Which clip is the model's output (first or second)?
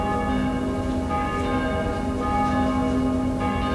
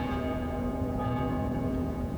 second